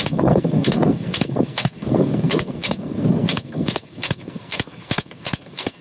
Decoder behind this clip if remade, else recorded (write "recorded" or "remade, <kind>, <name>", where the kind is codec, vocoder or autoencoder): remade, codec, SNAC